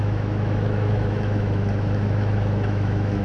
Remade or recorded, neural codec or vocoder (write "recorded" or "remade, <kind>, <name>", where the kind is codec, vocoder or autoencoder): remade, autoencoder, DAC-VAE